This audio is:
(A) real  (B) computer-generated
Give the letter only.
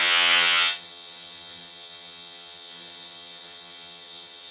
B